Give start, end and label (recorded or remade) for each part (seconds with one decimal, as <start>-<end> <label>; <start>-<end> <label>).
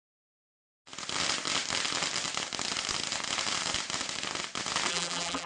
0.0-4.9 recorded; 4.9-5.5 remade